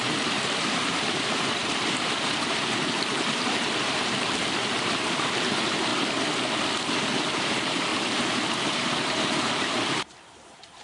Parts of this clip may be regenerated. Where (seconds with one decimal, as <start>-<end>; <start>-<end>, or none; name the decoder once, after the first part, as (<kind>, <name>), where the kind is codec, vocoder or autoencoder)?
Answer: 0.0-5.9 (vocoder, BigVGAN v2); 7.3-7.9; 8.6-10.8